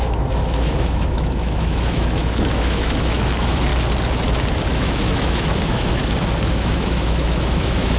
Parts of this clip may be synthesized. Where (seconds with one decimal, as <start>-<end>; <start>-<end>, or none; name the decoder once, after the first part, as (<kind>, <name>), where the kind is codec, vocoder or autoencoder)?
0.0-3.7 (autoencoder, DAC-VAE); 4.7-6.0; 6.5-8.0